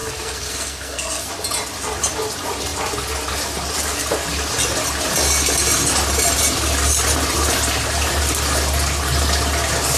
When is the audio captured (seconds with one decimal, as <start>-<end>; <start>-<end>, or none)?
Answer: 1.3-10.0

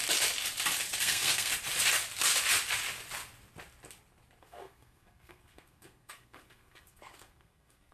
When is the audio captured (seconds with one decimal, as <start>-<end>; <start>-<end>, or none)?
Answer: 0.0-1.0; 1.5-4.4

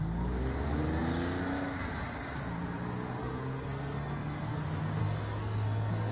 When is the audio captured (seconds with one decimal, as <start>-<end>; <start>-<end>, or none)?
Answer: 0.0-3.2; 4.6-5.0

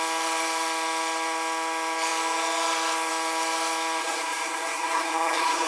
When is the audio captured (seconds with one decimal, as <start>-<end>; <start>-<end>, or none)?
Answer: 0.0-4.0